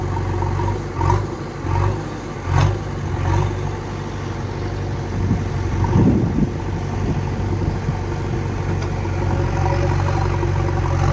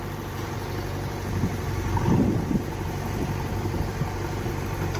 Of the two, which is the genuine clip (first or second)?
first